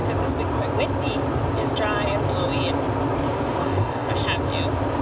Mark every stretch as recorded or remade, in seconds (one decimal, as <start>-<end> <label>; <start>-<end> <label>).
0.0-3.6 recorded; 3.6-4.1 remade; 4.1-5.0 recorded